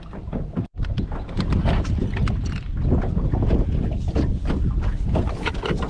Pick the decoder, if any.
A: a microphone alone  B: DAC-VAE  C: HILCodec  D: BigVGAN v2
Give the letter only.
A